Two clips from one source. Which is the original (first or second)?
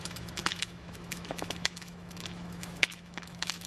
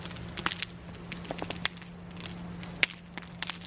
second